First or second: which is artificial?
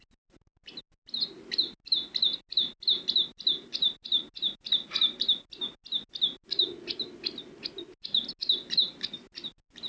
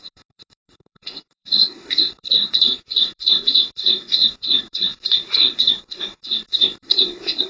second